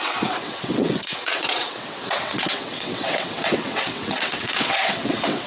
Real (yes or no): no